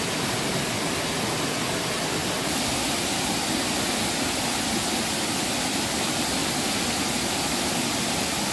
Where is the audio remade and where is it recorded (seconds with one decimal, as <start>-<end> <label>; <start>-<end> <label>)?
0.0-8.5 recorded